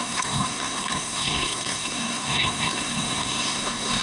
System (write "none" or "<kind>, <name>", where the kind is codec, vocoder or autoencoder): codec, SNAC